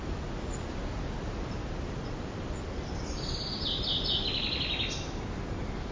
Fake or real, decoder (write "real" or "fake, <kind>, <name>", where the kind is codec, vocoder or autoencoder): real